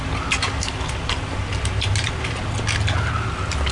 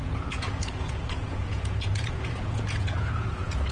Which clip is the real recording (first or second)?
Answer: first